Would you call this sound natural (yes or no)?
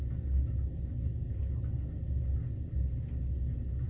yes